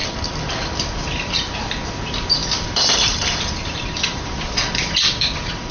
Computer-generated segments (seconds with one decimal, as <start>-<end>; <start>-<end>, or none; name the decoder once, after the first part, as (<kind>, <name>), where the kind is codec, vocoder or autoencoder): 0.9-5.7 (vocoder, BigVGAN v2)